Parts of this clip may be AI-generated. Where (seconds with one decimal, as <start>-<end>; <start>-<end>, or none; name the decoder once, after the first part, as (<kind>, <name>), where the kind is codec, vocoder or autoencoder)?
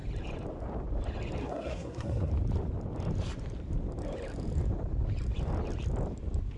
1.4-2.3 (codec, SNAC)